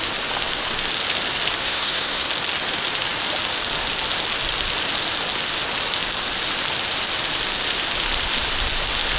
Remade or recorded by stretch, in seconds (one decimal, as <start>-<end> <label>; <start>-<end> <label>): 0.0-1.6 recorded; 1.6-2.3 remade; 2.3-9.2 recorded